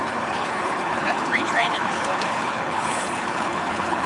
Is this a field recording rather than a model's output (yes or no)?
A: no